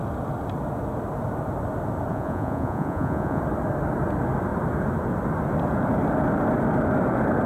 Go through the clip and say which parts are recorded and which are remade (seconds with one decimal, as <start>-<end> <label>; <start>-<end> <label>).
0.0-2.1 recorded; 2.1-3.4 remade; 3.4-7.5 recorded